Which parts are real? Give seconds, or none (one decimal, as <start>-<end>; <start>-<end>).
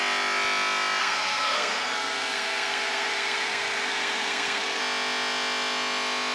0.0-1.0; 4.8-6.3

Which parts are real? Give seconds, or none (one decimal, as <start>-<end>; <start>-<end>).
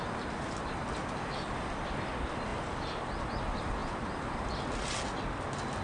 0.0-2.5; 3.3-3.8; 4.5-5.8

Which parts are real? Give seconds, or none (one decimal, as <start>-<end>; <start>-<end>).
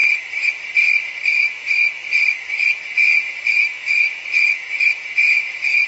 0.5-1.3; 1.9-2.6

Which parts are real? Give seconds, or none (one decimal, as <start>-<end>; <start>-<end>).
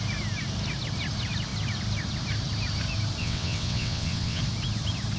0.0-3.2; 4.4-5.2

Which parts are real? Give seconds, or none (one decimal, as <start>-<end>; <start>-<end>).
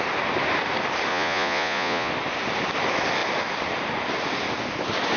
0.0-1.1; 2.1-5.2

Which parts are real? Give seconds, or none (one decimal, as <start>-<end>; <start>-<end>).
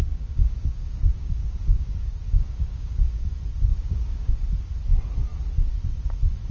3.3-3.7; 4.3-6.5